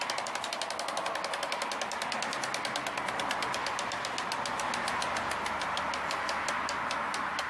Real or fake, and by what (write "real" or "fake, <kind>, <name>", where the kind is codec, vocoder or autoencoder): real